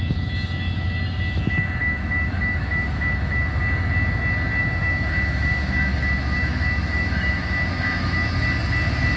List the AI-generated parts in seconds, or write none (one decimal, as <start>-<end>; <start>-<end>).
1.8-3.5; 4.6-8.3